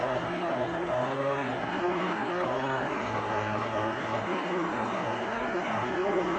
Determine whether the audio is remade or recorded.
remade